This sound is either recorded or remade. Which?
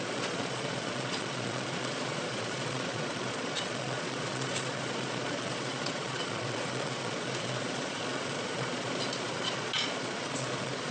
remade